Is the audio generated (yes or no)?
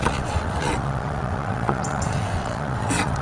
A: yes